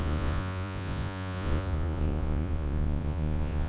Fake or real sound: fake